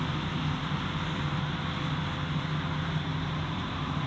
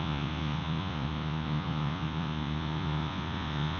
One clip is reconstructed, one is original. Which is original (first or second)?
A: first